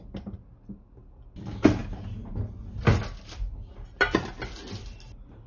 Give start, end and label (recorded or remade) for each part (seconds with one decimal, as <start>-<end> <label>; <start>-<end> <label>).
0.0-5.5 recorded